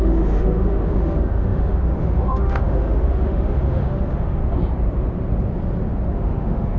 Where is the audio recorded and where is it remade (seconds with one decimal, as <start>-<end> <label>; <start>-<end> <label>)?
0.0-4.4 remade; 4.4-6.1 recorded; 6.1-6.8 remade